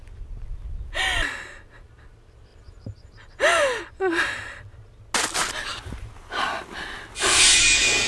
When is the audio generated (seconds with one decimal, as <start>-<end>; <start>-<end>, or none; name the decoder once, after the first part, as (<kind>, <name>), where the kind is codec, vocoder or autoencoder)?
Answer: 2.5-3.8 (vocoder, BigVGAN v2); 5.7-6.4